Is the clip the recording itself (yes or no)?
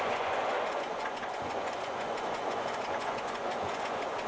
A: no